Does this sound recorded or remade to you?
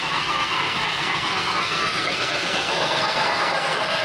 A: remade